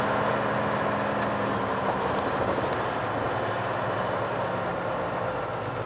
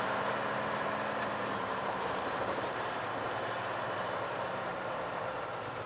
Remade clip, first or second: second